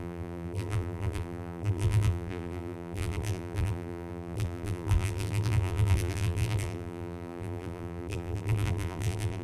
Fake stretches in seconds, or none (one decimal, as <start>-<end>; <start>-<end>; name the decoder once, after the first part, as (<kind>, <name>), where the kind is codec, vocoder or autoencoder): 0.0-9.4 (vocoder, BigVGAN v2)